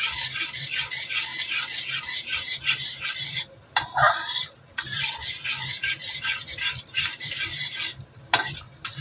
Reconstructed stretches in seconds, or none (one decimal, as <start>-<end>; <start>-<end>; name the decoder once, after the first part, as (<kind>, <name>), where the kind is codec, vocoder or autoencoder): 1.3-4.7 (vocoder, BigVGAN v2)